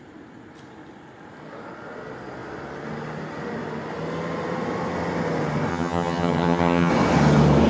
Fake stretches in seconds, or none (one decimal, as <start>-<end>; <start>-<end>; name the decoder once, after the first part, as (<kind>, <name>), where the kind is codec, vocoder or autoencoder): 5.7-6.9 (vocoder, HiFi-GAN)